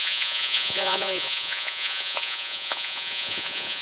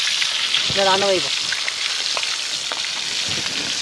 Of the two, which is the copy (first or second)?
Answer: first